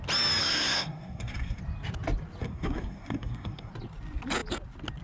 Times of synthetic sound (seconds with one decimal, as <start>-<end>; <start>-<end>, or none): 0.4-1.6; 2.4-3.7